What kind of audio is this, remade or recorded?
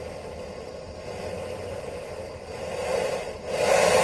recorded